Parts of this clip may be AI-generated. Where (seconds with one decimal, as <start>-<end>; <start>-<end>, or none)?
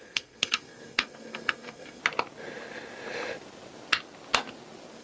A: 0.0-2.0